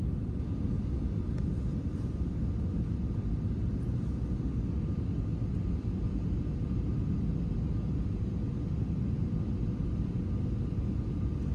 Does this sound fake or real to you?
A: real